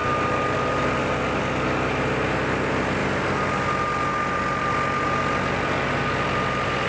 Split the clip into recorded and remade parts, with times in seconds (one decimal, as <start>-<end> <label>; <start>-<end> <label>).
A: 0.0-6.9 recorded